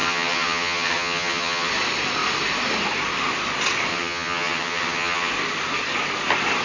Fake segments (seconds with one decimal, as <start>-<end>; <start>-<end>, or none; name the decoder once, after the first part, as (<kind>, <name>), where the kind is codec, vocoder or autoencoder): 0.0-1.7 (vocoder, HiFi-GAN); 3.9-5.3